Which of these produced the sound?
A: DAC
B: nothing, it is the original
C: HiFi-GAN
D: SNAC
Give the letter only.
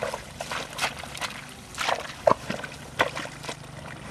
B